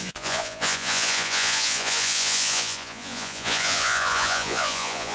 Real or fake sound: fake